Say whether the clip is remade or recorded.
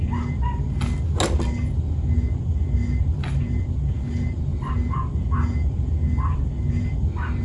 recorded